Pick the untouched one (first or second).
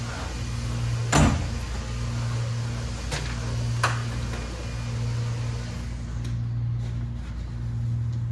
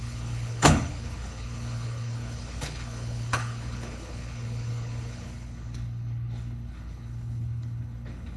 first